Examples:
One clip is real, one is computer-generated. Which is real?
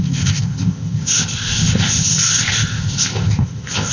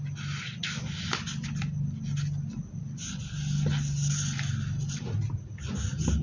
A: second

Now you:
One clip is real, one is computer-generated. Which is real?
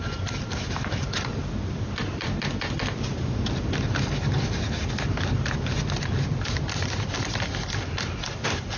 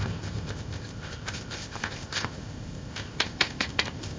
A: first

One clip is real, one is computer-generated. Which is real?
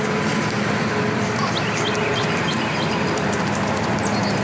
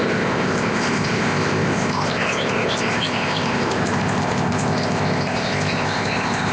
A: first